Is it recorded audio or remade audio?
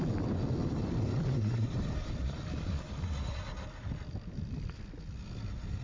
recorded